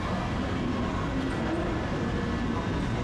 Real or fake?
real